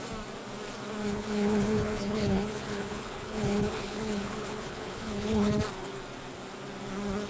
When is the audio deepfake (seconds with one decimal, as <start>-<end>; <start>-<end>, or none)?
1.1-5.5